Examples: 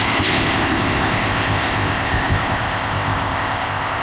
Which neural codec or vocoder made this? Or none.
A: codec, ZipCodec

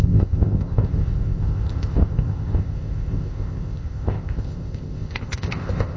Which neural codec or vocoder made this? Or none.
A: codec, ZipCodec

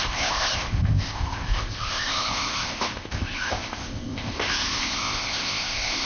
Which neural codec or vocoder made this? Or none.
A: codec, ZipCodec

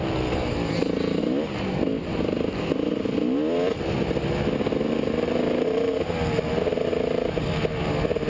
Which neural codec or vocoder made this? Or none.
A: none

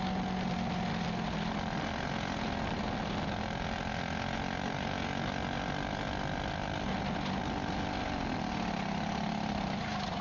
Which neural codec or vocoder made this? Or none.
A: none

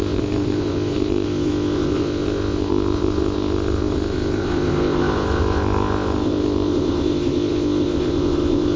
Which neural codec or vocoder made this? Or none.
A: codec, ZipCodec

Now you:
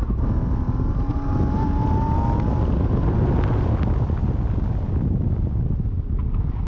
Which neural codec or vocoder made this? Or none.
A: none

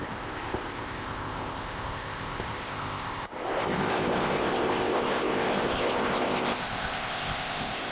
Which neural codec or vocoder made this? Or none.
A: codec, ZipCodec